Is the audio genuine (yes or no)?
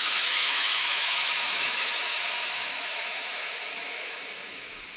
no